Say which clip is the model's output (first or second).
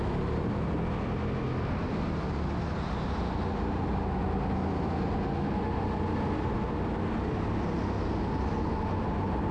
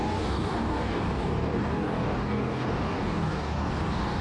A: second